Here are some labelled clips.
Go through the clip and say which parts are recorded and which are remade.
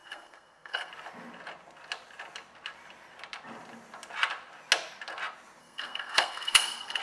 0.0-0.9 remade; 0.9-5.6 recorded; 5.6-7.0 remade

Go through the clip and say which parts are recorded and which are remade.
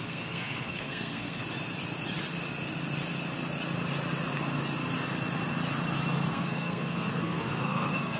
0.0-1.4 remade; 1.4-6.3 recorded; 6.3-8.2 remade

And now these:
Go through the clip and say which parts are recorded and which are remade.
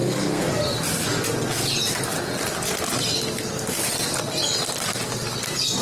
0.0-0.5 remade; 0.5-5.8 recorded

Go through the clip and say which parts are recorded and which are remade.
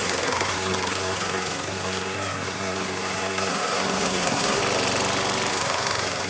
0.0-4.6 remade; 4.6-5.5 recorded; 5.5-6.3 remade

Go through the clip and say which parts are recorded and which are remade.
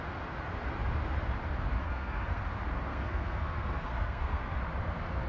0.0-1.8 recorded; 1.8-2.4 remade; 2.4-2.9 recorded; 2.9-4.6 remade; 4.6-5.3 recorded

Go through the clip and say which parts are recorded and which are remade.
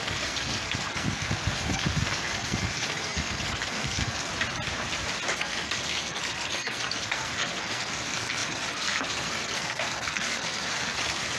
0.0-4.3 remade; 4.3-5.4 recorded; 5.4-11.4 remade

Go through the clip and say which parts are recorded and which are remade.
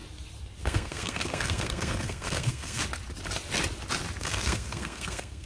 0.0-0.6 recorded; 0.6-2.8 remade; 2.8-4.2 recorded; 4.2-5.5 remade